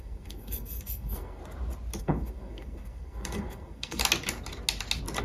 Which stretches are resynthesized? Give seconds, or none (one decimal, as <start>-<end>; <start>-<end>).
0.0-1.4; 2.0-4.0